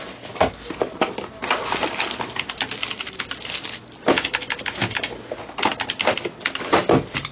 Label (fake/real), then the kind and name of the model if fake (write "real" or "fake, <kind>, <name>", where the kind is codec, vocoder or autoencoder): real